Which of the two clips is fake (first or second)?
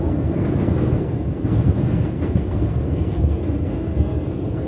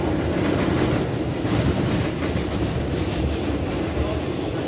first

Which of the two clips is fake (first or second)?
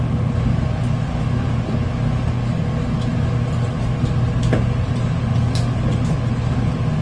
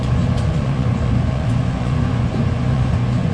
second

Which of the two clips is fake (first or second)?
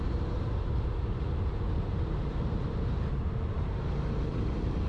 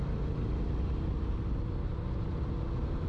first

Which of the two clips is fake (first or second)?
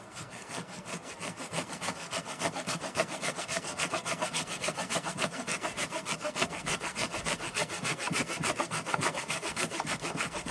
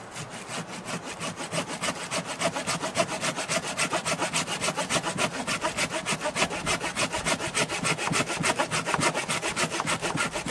first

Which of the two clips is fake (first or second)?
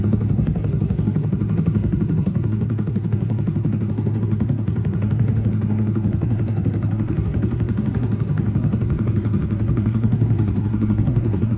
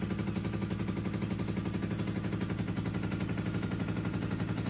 first